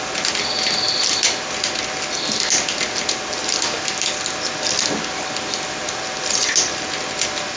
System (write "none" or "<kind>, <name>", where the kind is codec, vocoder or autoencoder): none